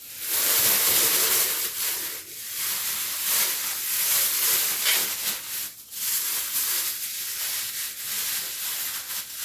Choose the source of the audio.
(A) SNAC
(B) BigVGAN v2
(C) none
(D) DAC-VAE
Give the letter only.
C